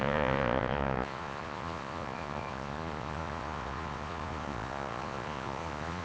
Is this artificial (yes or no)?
yes